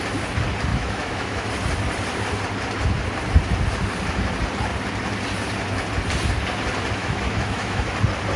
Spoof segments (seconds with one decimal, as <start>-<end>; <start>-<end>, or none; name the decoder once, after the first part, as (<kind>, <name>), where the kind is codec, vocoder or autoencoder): 0.7-1.5 (autoencoder, DAC-VAE); 7.0-8.0

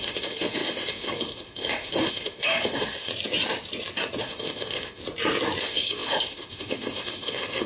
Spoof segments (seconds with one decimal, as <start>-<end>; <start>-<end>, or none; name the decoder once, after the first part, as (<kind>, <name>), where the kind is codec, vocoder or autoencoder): 0.0-3.1 (autoencoder, DAC-VAE); 4.2-5.0; 5.6-7.7

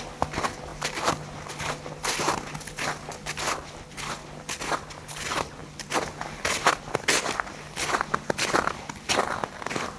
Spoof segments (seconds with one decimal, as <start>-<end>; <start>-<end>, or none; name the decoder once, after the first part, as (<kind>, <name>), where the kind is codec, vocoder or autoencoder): none